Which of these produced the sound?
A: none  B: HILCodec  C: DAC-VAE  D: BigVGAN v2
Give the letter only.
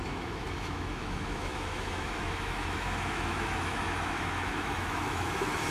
C